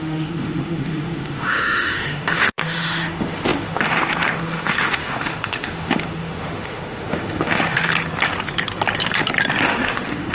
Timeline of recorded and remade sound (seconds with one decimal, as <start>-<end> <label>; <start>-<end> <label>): 0.0-7.9 remade; 7.9-9.7 recorded; 9.7-10.3 remade

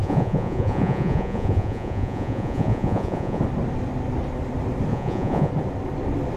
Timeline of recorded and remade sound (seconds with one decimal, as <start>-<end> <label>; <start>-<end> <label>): 0.0-3.4 remade; 3.4-4.9 recorded; 4.9-5.5 remade; 5.5-6.4 recorded

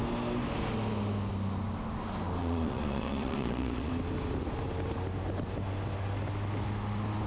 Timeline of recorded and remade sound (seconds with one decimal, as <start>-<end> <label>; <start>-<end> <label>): 0.0-2.4 recorded; 2.4-3.9 remade; 3.9-7.3 recorded

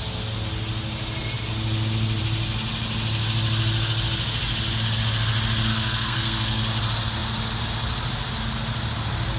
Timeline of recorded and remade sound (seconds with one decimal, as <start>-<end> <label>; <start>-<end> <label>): 0.0-5.7 recorded; 5.7-6.6 remade; 6.6-9.4 recorded

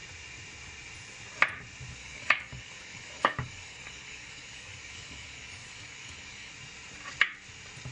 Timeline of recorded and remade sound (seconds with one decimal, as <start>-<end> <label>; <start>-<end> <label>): 0.0-2.0 recorded; 2.0-6.5 remade; 6.5-7.9 recorded

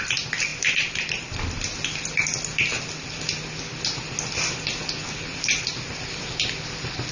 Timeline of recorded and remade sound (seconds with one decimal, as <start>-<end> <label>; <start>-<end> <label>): 0.0-7.1 recorded

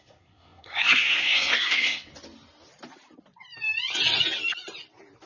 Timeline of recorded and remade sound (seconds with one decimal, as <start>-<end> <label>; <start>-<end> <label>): 0.0-2.1 remade; 2.1-5.3 recorded